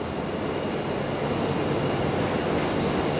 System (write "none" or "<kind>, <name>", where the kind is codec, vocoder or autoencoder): none